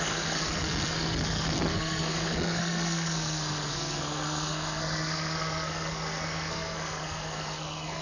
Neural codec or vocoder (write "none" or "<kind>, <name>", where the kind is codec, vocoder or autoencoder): codec, SNAC